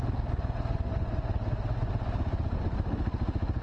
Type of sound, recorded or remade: recorded